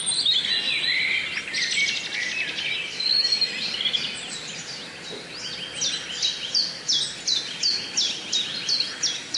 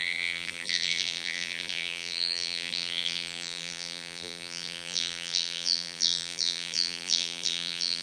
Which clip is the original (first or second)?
first